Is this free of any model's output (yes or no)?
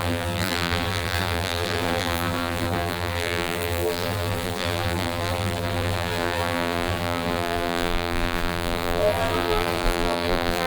no